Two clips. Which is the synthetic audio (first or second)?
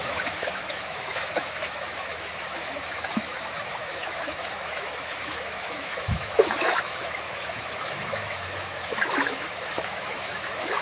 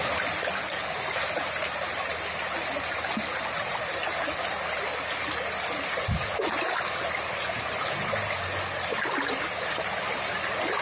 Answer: first